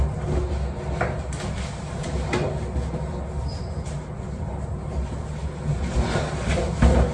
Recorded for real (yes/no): yes